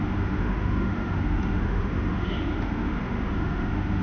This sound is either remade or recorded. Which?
remade